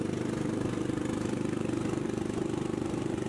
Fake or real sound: fake